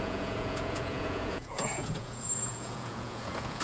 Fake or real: fake